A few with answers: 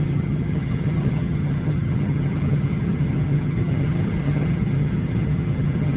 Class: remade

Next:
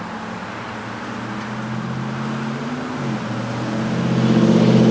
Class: recorded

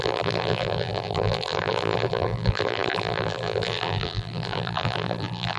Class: remade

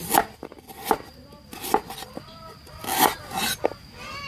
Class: recorded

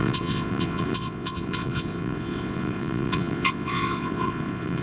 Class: remade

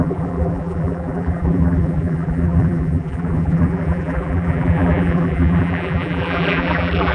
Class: remade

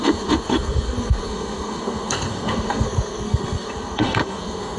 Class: remade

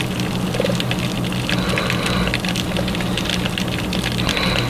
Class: recorded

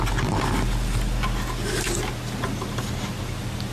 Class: recorded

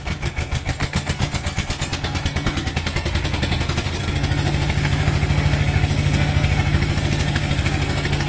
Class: remade